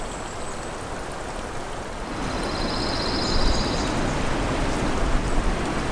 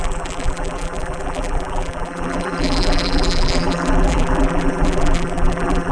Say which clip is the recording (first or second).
first